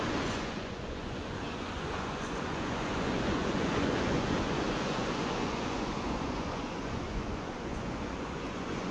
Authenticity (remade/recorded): remade